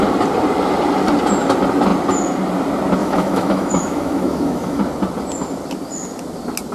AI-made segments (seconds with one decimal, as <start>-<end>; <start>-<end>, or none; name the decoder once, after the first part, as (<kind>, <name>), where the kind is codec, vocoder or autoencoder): 3.0-4.8 (autoencoder, DAC-VAE)

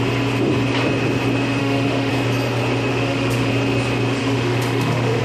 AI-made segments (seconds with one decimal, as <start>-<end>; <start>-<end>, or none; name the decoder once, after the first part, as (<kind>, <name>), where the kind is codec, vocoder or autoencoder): 1.6-2.1 (autoencoder, DAC-VAE); 2.9-3.5; 4.2-5.2